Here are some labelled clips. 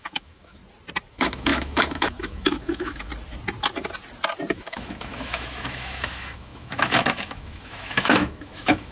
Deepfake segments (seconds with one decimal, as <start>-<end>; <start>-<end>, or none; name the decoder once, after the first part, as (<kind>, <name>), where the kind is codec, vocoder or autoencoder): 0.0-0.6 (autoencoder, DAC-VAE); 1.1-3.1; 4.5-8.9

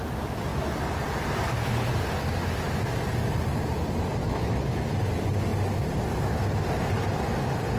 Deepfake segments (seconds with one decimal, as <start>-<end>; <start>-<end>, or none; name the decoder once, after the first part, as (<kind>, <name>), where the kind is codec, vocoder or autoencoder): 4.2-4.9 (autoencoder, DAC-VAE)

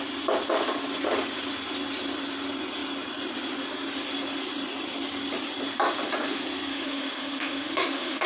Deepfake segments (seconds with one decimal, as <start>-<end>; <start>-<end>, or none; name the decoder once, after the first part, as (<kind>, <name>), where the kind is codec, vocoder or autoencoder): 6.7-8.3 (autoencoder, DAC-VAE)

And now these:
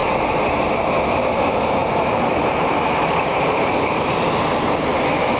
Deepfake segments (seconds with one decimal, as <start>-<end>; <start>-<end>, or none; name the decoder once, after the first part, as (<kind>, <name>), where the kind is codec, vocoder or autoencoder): 4.9-5.4 (autoencoder, DAC-VAE)

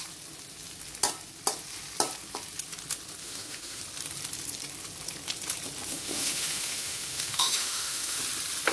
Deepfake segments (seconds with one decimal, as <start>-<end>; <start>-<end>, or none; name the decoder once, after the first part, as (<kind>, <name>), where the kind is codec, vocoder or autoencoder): 3.2-3.8 (autoencoder, DAC-VAE); 5.9-8.2

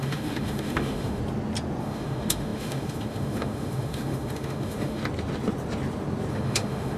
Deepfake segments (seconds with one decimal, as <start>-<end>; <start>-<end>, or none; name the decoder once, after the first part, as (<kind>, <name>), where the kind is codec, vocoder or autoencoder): 0.0-1.2 (autoencoder, DAC-VAE); 1.8-5.0; 6.3-7.0

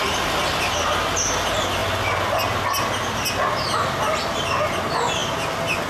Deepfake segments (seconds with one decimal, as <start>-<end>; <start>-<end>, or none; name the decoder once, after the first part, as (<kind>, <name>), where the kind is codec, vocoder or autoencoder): none

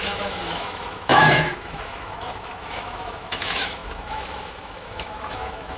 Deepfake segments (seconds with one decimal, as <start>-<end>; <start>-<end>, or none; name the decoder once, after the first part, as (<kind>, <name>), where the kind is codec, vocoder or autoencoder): 0.0-5.8 (autoencoder, DAC-VAE)